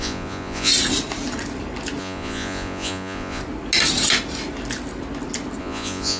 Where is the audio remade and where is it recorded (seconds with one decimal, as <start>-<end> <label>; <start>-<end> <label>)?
0.0-0.7 remade; 0.7-2.0 recorded; 2.0-3.4 remade; 3.4-5.6 recorded; 5.6-6.2 remade